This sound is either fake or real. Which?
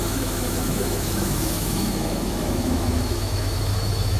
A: fake